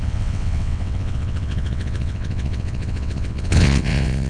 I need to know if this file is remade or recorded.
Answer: remade